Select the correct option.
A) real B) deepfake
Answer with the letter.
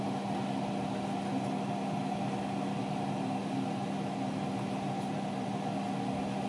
A